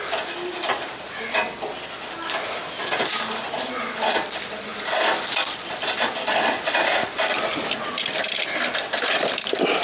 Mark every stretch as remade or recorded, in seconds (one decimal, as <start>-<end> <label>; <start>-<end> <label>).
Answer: 0.0-9.8 recorded